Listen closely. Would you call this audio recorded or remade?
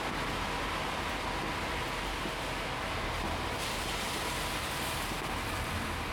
recorded